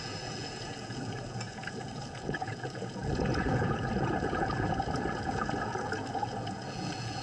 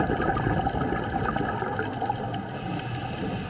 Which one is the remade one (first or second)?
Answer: first